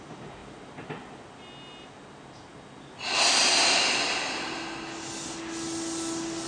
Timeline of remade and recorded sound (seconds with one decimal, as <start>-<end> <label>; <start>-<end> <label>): 0.0-6.5 recorded